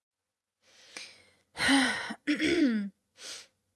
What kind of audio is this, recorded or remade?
remade